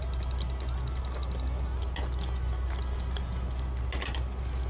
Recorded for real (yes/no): yes